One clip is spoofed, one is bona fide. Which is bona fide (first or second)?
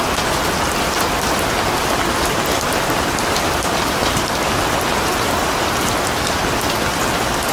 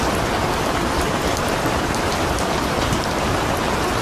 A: first